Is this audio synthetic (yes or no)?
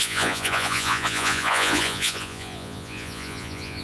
yes